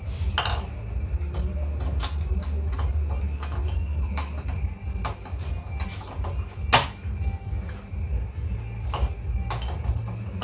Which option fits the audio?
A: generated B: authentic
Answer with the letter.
B